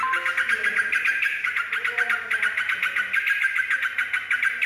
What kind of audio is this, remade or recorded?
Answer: recorded